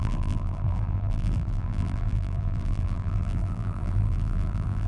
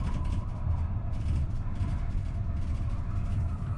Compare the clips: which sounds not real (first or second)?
first